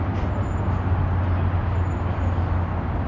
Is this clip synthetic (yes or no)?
no